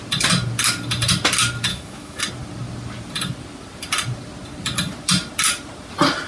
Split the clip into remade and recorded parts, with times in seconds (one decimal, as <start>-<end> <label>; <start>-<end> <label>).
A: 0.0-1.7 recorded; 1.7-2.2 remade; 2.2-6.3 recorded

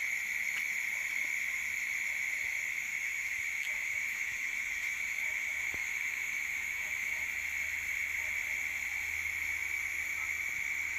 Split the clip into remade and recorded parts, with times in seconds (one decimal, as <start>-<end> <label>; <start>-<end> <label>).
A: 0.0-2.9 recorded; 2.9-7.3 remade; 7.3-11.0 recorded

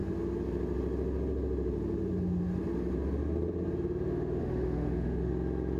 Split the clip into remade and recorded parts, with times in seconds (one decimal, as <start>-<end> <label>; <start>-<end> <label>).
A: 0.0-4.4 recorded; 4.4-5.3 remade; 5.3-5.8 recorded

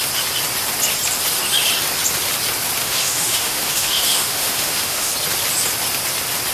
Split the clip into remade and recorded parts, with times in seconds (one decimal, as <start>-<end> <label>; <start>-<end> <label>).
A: 0.0-2.8 recorded; 2.8-5.1 remade; 5.1-6.5 recorded